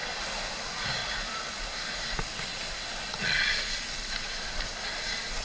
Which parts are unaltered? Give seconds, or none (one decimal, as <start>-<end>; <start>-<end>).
0.0-1.0; 1.5-5.4